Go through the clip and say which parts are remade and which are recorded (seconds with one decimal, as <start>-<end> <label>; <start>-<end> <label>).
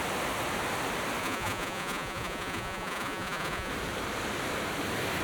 0.0-1.2 recorded; 1.2-3.7 remade; 3.7-5.2 recorded